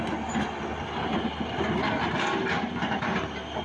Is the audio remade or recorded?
recorded